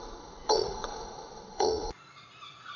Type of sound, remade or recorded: remade